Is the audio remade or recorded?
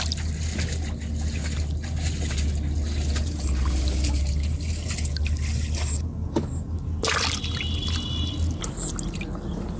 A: recorded